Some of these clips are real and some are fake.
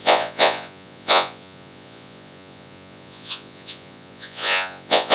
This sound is fake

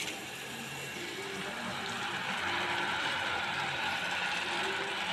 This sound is fake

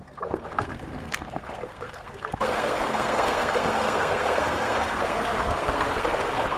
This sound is fake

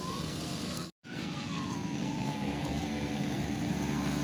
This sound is fake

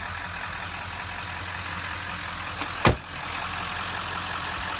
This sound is real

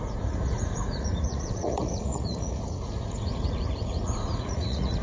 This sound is fake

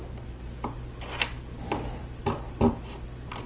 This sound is real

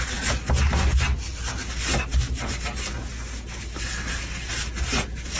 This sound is real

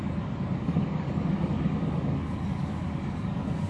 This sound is fake